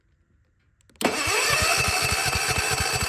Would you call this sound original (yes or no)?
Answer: yes